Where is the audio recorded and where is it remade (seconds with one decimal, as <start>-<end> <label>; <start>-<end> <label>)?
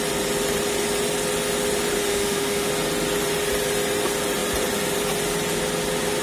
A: 0.0-2.1 recorded; 2.1-2.7 remade; 2.7-6.2 recorded